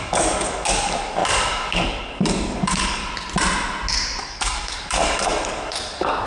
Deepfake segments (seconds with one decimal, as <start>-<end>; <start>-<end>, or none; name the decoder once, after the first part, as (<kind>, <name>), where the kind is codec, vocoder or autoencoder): 0.0-3.0 (codec, DAC); 4.2-6.3